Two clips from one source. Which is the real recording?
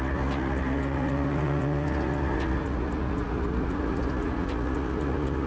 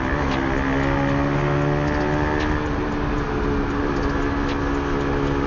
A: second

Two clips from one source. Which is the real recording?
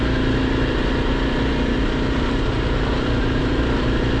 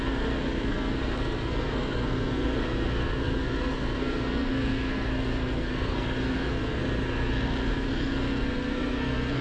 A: first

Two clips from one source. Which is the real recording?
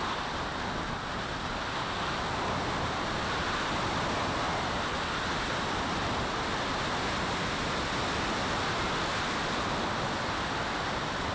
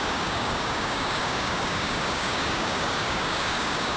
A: first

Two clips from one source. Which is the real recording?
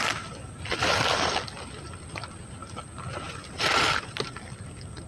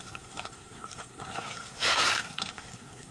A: first